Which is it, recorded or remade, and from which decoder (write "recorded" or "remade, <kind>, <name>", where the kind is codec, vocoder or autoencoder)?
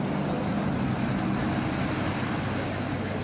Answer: recorded